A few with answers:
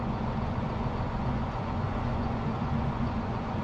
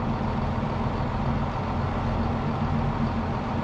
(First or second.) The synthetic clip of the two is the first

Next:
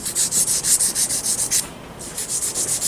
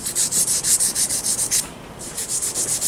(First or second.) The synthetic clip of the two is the second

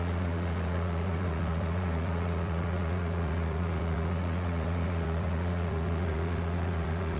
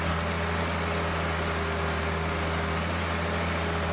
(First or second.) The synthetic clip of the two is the first